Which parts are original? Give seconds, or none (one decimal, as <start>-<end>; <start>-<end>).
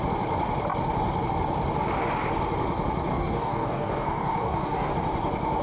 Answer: 0.0-3.1; 4.9-5.6